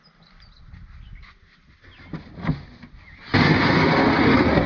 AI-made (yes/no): no